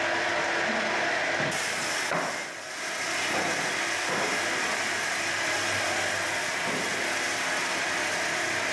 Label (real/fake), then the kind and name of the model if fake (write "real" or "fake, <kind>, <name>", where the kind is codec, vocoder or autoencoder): real